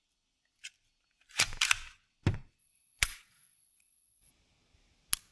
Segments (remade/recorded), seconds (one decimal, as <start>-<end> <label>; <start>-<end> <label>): 0.0-2.6 recorded; 2.6-4.3 remade; 4.3-5.3 recorded